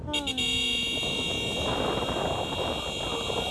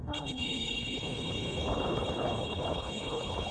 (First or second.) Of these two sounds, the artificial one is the second